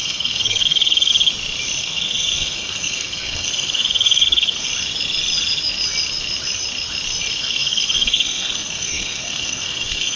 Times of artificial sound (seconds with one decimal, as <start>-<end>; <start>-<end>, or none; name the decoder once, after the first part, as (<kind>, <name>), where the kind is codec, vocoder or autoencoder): 0.0-1.1 (codec, SNAC); 1.8-4.7; 7.4-10.2